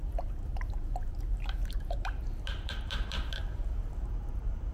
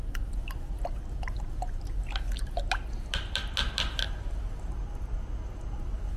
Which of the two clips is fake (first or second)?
first